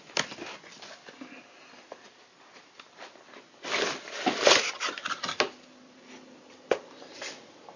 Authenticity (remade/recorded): recorded